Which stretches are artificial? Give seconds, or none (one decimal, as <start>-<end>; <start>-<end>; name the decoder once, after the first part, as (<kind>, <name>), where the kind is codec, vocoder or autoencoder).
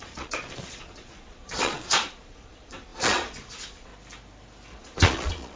0.0-3.9 (vocoder, Vocos); 4.8-5.6